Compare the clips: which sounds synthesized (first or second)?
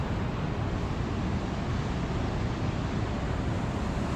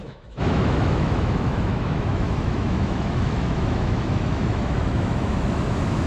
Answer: second